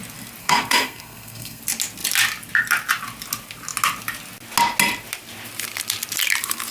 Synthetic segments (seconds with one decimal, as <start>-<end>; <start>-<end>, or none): 0.4-1.6